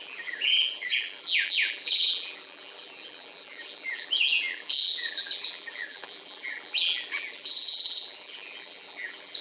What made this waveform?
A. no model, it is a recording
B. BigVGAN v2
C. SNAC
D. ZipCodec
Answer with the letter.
B